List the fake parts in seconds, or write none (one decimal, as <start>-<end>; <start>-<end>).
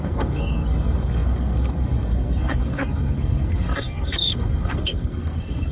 0.0-5.7